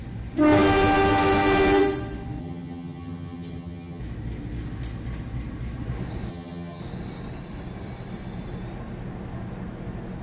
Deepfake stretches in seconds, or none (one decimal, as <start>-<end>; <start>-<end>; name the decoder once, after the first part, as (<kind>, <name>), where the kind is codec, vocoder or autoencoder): 2.4-4.0 (vocoder, HiFi-GAN); 6.3-6.8